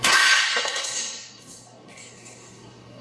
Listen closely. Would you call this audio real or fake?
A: fake